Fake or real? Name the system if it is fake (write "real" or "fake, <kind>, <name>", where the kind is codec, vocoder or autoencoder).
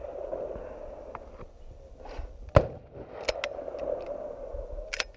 real